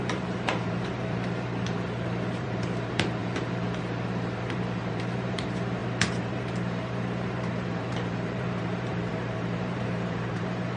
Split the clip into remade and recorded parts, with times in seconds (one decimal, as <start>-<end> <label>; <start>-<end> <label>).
0.0-10.8 remade